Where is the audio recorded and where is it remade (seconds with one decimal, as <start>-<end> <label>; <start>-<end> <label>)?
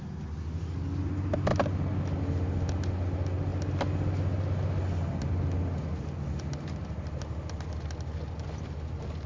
0.0-9.3 recorded